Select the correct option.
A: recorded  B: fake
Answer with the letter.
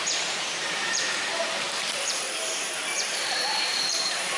B